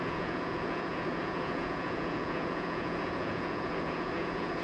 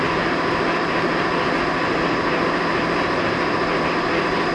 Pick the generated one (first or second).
first